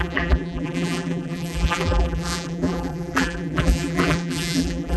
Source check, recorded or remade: remade